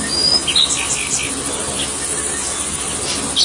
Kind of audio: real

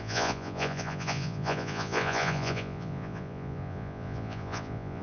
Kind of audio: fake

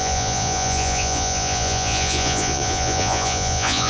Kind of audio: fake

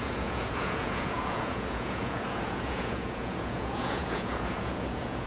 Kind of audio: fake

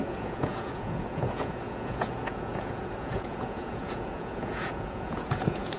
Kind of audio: fake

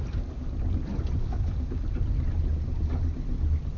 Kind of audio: real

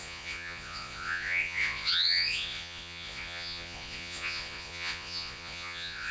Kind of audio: fake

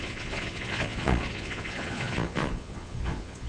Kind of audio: fake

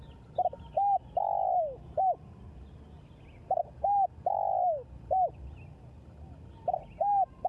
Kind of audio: real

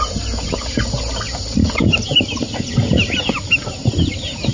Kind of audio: real